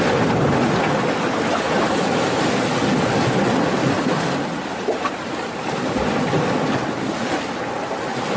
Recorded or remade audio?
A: recorded